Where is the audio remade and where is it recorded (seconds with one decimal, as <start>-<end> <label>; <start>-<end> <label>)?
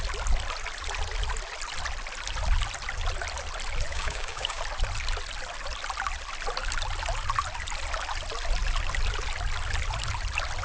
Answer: 0.0-3.9 recorded; 3.9-4.6 remade; 4.6-10.6 recorded